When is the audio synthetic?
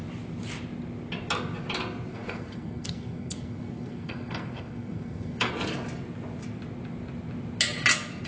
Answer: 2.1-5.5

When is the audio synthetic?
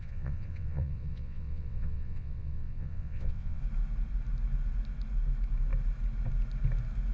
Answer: 0.0-3.6